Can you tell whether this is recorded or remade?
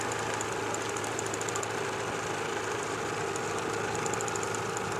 recorded